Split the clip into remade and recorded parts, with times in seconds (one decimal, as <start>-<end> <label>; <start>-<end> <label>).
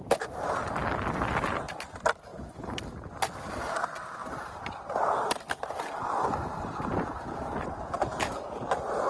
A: 0.0-2.3 recorded; 2.3-3.3 remade; 3.3-4.2 recorded; 4.2-4.9 remade; 4.9-9.1 recorded